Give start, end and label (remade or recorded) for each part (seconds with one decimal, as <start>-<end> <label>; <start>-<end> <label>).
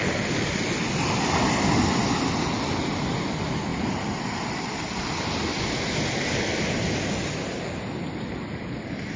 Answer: 0.0-9.2 recorded